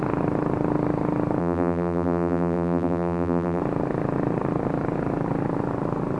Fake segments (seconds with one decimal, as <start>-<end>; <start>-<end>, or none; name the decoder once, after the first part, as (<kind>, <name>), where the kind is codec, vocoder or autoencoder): 1.4-3.6 (vocoder, BigVGAN v2)